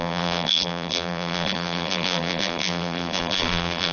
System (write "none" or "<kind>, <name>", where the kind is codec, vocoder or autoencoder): vocoder, BigVGAN v2